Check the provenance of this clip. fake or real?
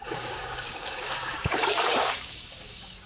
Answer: fake